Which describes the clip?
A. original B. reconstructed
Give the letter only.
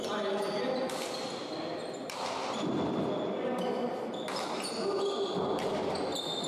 A